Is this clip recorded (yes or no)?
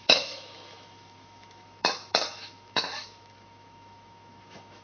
no